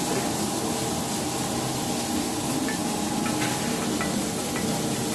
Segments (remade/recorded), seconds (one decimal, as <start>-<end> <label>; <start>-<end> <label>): 0.0-5.1 recorded